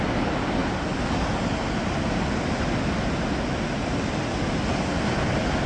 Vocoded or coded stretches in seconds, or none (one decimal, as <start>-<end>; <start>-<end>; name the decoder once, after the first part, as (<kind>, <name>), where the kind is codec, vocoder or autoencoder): none